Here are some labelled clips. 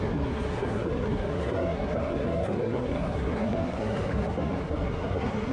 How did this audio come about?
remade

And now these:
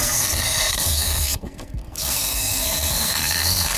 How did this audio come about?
remade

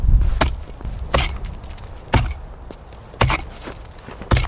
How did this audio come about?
recorded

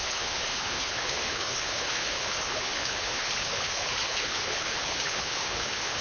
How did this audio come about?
remade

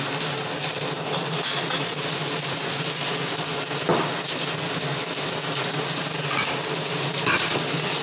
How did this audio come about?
recorded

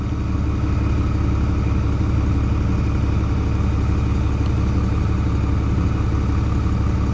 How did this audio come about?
recorded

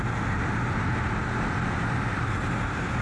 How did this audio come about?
recorded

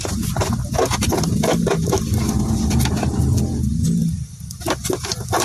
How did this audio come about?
recorded